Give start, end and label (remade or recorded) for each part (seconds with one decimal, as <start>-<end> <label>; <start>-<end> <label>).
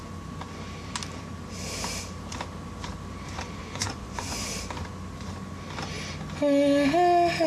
0.0-3.6 recorded; 3.6-4.4 remade; 4.4-7.5 recorded